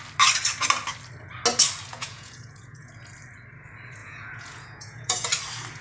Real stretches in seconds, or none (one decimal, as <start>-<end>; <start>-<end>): 0.0-1.9; 2.9-4.0; 5.3-5.8